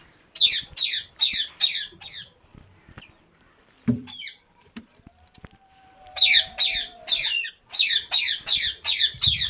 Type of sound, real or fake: fake